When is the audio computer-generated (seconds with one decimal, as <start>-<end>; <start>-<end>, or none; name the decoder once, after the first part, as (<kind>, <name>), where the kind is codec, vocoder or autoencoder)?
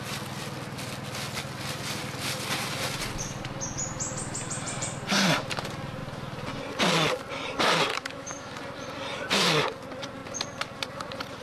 7.9-8.5 (autoencoder, DAC-VAE)